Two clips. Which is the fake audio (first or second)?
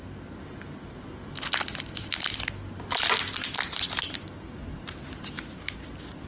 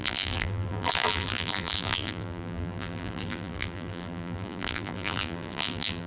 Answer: second